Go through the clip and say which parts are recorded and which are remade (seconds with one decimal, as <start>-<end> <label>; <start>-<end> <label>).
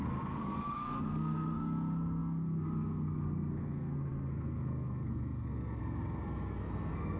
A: 0.0-7.2 remade